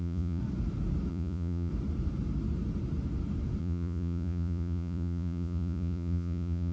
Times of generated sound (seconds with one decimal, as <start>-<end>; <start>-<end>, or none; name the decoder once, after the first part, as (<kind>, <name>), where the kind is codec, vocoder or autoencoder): 0.0-0.4 (vocoder, Vocos); 1.1-1.7; 3.6-6.7